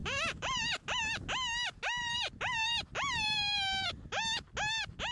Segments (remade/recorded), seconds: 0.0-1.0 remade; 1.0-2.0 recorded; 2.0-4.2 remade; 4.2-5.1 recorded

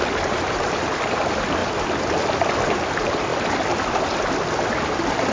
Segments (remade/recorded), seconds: 0.0-3.3 remade; 3.3-4.0 recorded; 4.0-5.3 remade

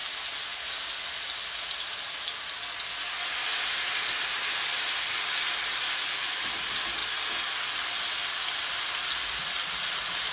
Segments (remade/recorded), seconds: 0.0-10.3 recorded

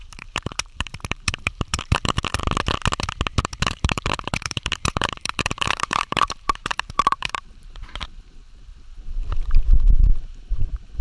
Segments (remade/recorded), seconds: 0.0-2.4 remade; 2.4-3.4 recorded; 3.4-8.7 remade; 8.7-10.4 recorded; 10.4-11.0 remade

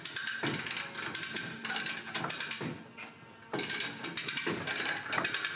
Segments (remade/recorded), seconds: 0.0-5.6 recorded

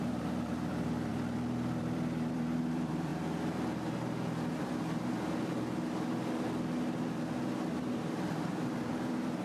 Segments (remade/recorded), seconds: 0.0-3.1 remade; 3.1-7.8 recorded; 7.8-9.4 remade

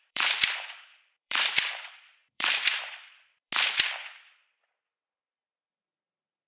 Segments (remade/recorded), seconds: 0.0-3.5 remade; 3.5-6.5 recorded